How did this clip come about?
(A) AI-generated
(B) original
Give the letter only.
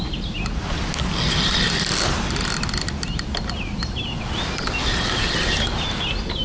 B